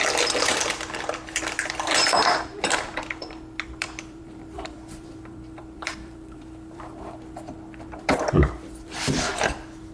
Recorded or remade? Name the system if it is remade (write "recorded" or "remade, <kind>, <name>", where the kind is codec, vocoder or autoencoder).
remade, vocoder, BigVGAN v2